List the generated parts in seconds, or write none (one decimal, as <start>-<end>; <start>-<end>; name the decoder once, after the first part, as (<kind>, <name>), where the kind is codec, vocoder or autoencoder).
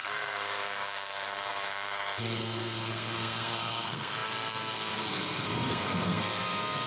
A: 0.0-6.9 (codec, SNAC)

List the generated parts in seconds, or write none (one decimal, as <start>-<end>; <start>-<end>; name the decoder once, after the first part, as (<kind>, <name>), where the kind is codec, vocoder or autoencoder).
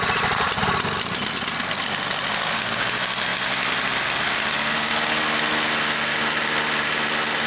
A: none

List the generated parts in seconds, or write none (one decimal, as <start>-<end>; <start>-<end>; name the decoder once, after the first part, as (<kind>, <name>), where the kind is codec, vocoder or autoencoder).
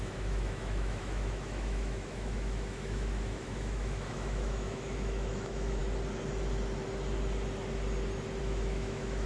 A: 0.0-5.8 (autoencoder, DAC-VAE); 8.4-9.3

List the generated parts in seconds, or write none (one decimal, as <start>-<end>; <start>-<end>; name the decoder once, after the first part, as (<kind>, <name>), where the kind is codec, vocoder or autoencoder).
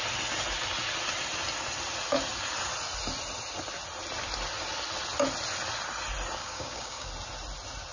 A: 6.4-7.1 (codec, DAC)